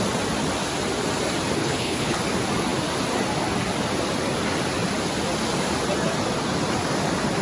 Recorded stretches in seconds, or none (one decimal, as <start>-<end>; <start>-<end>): 0.0-1.6; 2.2-7.4